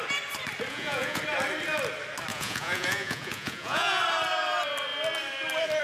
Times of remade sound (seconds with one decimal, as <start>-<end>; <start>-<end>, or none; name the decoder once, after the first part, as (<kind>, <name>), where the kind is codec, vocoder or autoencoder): 0.7-1.2 (vocoder, Vocos); 2.3-4.0